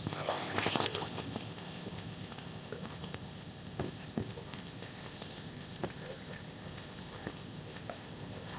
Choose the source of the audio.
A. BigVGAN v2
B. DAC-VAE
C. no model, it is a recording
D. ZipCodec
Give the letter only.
D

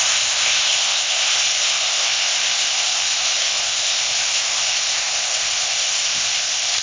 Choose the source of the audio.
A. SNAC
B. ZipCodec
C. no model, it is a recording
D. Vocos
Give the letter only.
B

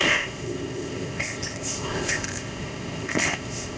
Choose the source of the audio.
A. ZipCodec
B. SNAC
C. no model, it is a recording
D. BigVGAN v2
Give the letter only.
A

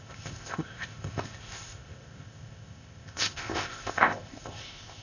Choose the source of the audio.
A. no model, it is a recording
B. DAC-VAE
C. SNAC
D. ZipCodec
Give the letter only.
D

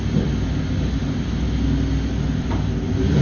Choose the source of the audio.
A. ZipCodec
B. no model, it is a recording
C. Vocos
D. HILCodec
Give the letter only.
B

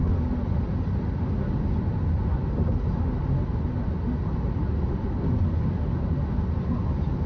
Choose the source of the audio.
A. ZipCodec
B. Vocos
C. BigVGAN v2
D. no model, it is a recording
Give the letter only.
D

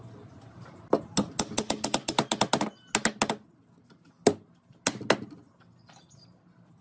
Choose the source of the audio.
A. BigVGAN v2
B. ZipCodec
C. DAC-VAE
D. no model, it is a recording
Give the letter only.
D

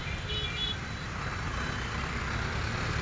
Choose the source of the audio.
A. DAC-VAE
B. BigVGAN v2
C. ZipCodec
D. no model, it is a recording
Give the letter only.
D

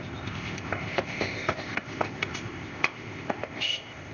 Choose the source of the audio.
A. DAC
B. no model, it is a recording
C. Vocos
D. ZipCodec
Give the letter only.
D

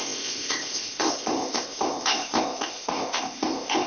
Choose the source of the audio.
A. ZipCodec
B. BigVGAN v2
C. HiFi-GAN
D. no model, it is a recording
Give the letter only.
A